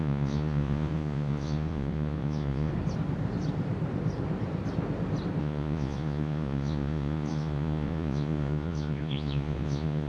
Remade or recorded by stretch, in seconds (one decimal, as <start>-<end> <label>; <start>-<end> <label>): 0.0-2.7 remade; 2.7-5.4 recorded; 5.4-10.1 remade